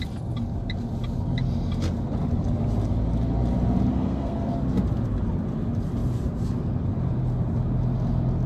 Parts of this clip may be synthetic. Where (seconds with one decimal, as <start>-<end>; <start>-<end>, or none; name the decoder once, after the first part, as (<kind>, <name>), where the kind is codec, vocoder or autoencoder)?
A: 3.9-4.5 (codec, SNAC)